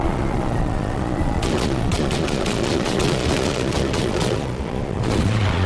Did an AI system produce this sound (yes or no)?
yes